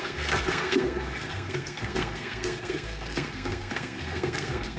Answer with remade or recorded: remade